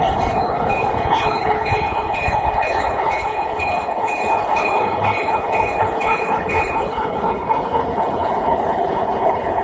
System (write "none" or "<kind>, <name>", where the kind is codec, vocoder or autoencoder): codec, HILCodec